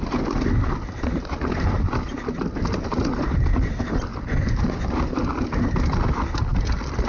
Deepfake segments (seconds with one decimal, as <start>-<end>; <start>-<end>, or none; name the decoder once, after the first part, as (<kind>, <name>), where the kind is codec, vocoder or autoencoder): none